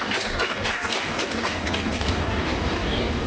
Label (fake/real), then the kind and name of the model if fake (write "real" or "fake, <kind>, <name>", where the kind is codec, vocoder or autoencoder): fake, codec, DAC